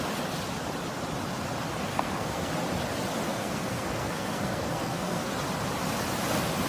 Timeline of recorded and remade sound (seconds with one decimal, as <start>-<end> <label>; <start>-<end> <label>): 0.0-1.9 recorded; 1.9-2.5 remade; 2.5-3.3 recorded; 3.3-5.3 remade; 5.3-6.7 recorded